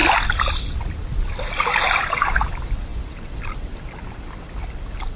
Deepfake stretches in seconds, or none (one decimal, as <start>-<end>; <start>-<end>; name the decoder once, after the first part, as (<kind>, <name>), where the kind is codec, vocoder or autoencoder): none